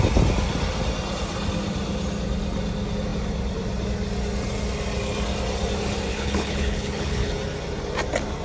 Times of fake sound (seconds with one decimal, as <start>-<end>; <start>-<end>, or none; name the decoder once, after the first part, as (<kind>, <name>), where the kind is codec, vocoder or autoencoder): 6.1-7.3 (codec, HILCodec)